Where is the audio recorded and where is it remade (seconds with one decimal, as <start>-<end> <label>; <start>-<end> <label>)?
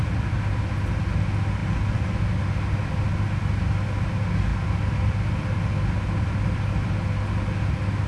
0.0-8.1 recorded